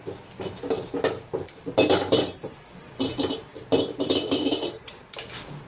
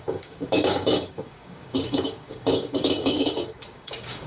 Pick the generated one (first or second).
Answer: second